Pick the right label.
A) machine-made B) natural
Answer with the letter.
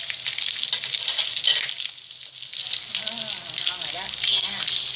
B